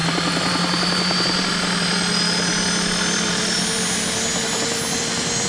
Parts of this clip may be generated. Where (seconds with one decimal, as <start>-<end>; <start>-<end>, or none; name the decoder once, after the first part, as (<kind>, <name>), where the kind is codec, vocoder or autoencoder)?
none

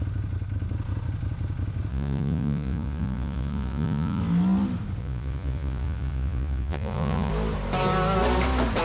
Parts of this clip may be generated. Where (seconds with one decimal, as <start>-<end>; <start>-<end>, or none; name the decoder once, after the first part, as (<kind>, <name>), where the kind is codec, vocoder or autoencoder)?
1.9-4.2 (vocoder, Vocos); 5.0-7.3

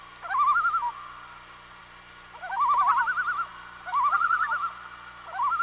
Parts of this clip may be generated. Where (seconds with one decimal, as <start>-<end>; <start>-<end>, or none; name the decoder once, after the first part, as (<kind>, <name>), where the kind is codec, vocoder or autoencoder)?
none

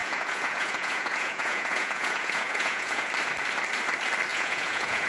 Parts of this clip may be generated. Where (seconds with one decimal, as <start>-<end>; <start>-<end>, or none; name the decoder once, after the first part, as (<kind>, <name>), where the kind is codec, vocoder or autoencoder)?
0.0-3.1 (vocoder, Vocos); 4.3-5.1

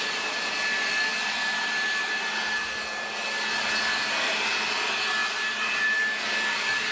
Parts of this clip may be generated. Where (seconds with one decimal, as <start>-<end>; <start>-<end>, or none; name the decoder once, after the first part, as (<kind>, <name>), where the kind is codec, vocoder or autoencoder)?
none